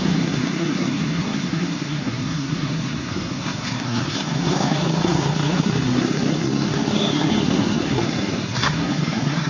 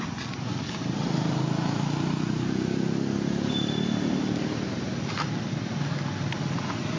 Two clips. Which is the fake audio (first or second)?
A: first